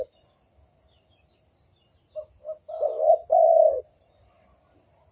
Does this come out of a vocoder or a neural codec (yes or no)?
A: no